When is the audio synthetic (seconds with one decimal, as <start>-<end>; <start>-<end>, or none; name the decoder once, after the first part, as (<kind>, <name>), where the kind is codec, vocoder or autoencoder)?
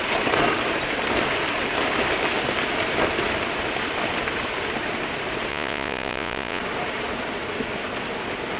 5.5-6.6 (vocoder, Vocos)